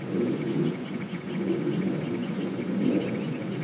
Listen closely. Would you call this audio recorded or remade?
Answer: remade